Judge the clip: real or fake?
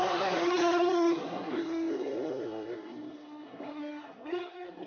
fake